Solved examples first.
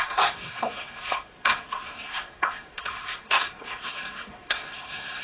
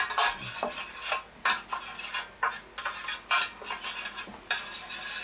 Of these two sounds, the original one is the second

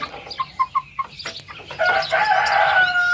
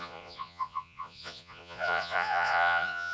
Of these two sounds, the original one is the first